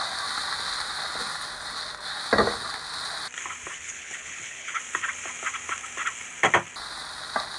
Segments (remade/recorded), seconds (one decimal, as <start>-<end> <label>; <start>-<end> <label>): 0.0-3.7 recorded; 3.7-4.8 remade; 4.8-7.6 recorded